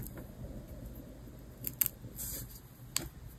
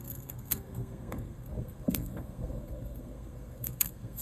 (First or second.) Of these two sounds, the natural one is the first